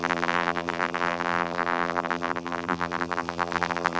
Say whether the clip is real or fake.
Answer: fake